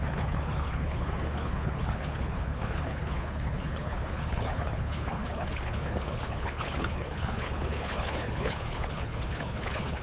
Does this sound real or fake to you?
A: fake